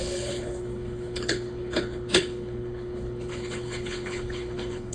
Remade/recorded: remade